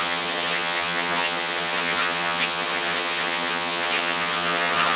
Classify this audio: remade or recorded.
remade